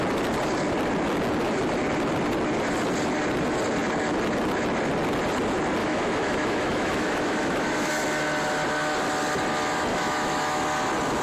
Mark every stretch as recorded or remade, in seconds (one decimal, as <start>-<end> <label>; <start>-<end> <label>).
0.0-5.8 recorded; 5.8-7.9 remade; 7.9-9.9 recorded; 9.9-10.6 remade; 10.6-11.2 recorded

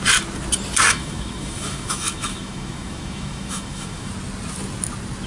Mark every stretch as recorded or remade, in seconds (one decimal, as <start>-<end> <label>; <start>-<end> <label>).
0.0-0.9 recorded; 0.9-4.1 remade; 4.1-5.3 recorded

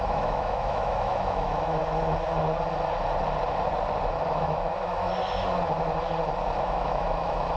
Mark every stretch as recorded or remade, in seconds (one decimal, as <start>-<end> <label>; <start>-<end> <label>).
0.0-1.8 remade; 1.8-4.3 recorded; 4.3-5.1 remade; 5.1-6.6 recorded; 6.6-7.6 remade

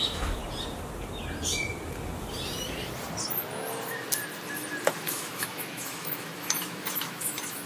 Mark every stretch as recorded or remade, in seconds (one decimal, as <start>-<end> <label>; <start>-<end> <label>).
0.0-0.4 remade; 0.4-5.0 recorded; 5.0-7.7 remade

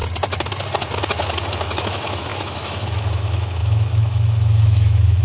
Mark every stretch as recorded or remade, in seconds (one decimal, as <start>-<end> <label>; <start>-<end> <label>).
0.0-1.8 recorded; 1.8-5.2 remade

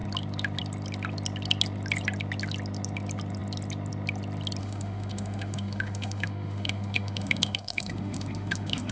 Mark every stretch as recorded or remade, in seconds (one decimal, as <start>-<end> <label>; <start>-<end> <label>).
0.0-4.6 recorded; 4.6-8.9 remade

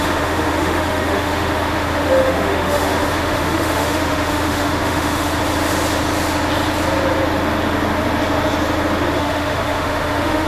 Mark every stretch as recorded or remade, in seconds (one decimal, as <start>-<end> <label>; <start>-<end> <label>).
0.0-5.3 remade; 5.3-9.2 recorded; 9.2-10.5 remade

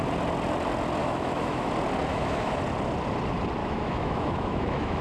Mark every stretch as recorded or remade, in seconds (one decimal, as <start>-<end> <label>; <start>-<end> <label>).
0.0-1.0 recorded; 1.0-1.7 remade; 1.7-2.1 recorded; 2.1-2.6 remade; 2.6-3.6 recorded; 3.6-5.0 remade